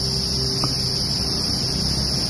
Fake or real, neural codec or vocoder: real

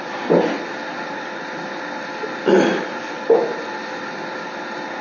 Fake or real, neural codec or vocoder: real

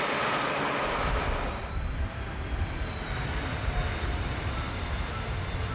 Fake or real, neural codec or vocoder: real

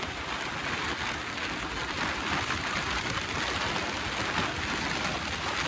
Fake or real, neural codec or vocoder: real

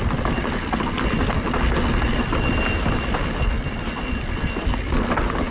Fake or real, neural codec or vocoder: real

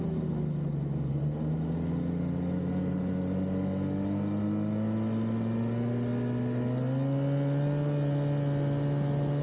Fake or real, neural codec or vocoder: real